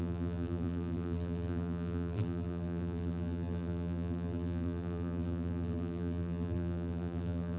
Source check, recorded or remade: remade